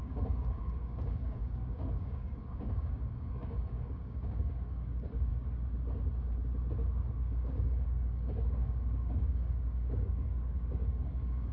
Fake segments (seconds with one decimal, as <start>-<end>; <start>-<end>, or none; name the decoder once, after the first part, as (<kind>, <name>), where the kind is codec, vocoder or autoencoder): 0.0-5.3 (codec, DAC); 7.1-11.5